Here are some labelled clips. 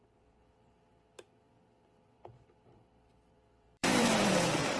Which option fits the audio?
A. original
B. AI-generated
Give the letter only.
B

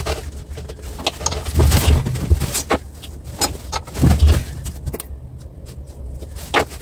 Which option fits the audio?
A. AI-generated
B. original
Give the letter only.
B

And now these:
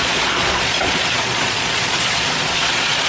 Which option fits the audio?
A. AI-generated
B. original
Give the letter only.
A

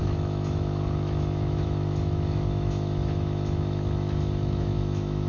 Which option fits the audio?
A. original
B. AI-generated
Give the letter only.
B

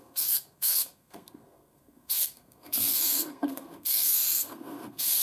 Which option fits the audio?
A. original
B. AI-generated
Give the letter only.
B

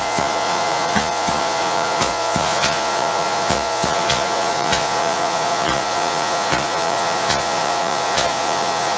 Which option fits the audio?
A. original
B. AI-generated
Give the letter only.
B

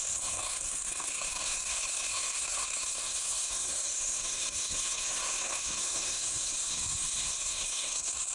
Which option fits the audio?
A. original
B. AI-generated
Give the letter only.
B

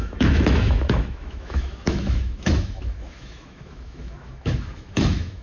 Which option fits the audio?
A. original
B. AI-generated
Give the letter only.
B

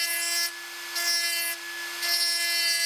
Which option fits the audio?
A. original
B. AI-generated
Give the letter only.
A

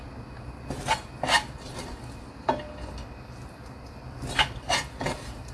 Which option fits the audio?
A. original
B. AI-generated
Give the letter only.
A